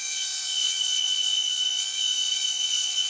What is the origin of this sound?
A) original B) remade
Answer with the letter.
B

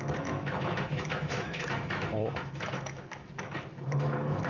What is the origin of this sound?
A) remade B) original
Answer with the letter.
A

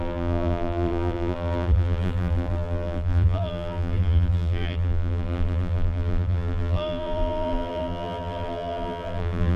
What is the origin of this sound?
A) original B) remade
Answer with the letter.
B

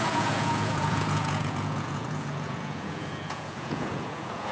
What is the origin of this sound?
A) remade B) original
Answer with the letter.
A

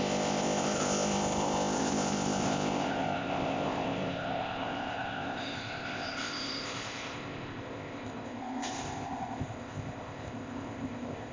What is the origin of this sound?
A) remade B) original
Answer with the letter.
A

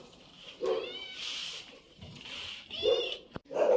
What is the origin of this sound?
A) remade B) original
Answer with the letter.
A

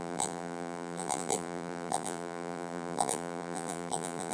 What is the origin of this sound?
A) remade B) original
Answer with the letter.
A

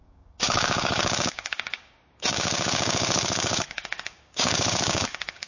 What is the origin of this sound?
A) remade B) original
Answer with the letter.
A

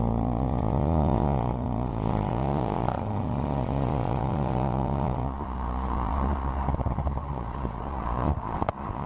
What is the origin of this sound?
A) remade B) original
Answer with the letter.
A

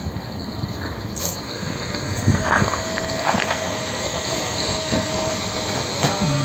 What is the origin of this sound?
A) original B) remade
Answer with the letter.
B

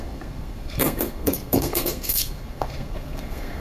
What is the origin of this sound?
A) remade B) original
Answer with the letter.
A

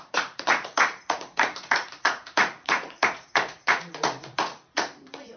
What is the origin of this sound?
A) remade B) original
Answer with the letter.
A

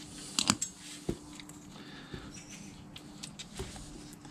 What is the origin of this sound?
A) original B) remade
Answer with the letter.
A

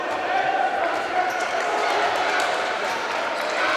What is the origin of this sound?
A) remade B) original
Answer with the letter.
A